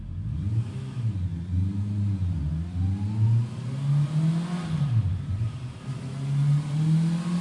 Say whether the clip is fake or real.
real